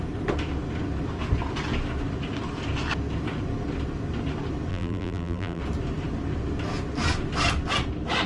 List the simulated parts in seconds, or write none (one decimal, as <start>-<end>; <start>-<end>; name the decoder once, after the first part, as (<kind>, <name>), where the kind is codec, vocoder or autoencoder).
4.7-5.6 (vocoder, BigVGAN v2)